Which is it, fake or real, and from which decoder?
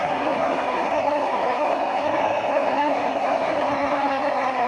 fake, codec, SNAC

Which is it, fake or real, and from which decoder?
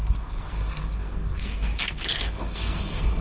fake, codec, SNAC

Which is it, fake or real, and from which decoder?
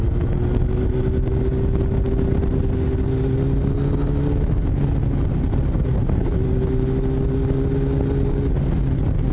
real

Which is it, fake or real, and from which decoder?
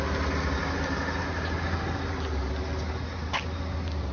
real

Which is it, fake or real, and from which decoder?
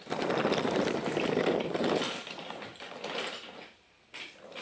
real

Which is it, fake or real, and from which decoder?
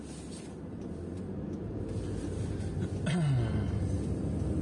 real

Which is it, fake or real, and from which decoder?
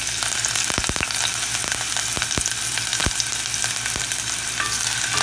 real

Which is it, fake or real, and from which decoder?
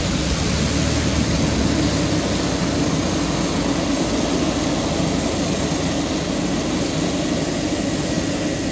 real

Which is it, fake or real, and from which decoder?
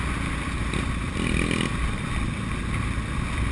real